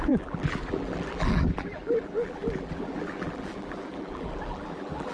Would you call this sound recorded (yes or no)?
no